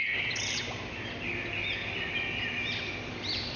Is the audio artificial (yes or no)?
no